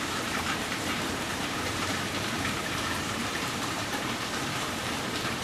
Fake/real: fake